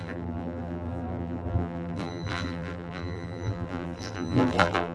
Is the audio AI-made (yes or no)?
yes